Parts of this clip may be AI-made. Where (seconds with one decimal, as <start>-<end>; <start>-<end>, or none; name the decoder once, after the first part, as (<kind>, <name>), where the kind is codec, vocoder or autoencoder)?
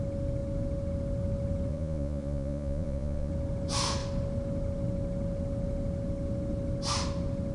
1.7-3.3 (vocoder, Vocos)